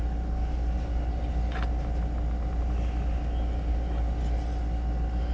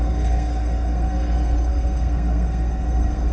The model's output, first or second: second